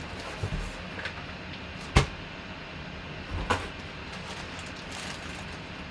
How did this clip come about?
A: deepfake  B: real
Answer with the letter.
B